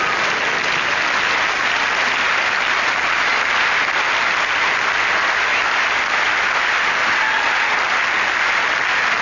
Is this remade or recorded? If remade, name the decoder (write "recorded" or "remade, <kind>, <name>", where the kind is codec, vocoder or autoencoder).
recorded